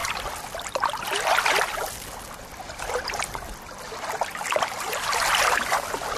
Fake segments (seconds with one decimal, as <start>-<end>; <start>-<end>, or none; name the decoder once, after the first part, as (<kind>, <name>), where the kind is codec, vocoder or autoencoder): none